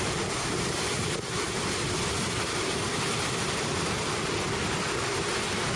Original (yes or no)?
yes